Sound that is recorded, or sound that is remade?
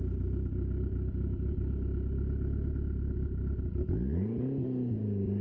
recorded